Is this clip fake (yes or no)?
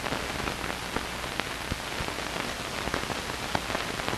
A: no